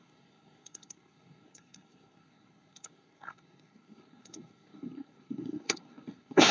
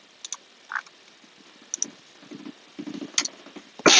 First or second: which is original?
second